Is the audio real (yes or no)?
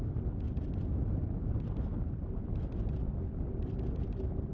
yes